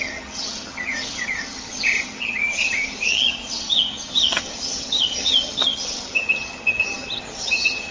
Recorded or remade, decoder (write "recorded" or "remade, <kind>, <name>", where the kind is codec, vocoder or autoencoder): remade, vocoder, HiFi-GAN